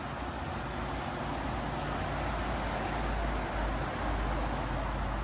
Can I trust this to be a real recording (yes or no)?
yes